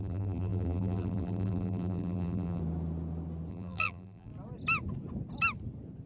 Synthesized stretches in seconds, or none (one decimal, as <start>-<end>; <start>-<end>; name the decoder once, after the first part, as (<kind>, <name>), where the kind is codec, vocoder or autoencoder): 0.0-2.6 (vocoder, BigVGAN v2); 3.5-4.3